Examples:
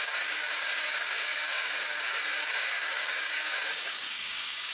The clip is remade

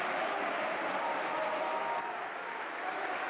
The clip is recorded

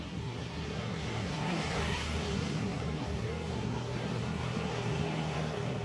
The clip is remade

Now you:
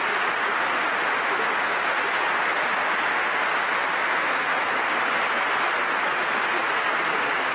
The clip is recorded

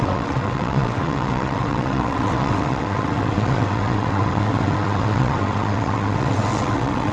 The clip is remade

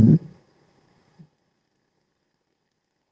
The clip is remade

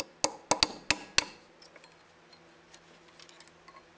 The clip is recorded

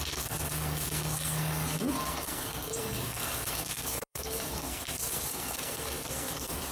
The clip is remade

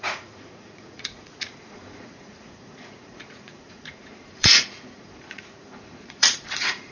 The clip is remade